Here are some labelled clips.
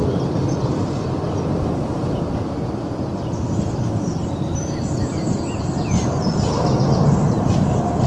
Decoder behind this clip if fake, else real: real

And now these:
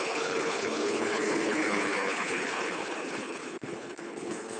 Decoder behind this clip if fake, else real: fake, codec, HILCodec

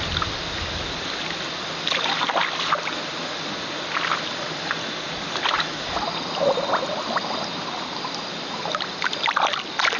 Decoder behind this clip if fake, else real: real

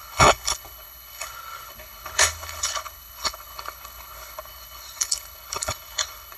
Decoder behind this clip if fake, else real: fake, codec, HILCodec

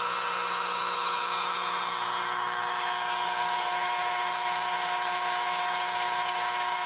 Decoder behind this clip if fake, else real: fake, codec, HILCodec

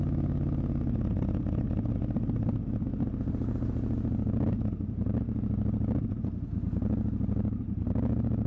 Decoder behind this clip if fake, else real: real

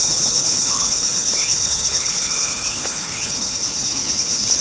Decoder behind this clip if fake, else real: fake, codec, HILCodec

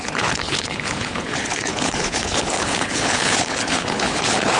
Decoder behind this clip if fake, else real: fake, codec, HILCodec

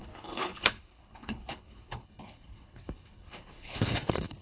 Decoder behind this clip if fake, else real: fake, codec, HILCodec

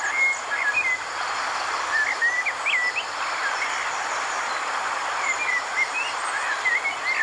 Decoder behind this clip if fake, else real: real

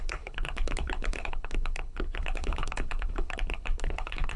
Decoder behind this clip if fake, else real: fake, codec, HILCodec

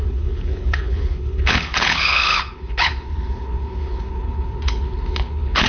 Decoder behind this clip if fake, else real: fake, codec, HILCodec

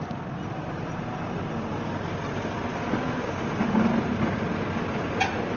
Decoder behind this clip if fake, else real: real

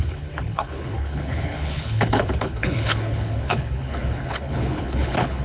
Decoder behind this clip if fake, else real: fake, codec, HILCodec